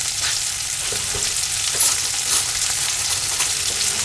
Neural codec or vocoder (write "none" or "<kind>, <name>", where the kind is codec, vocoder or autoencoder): none